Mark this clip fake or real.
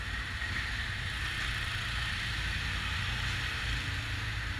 real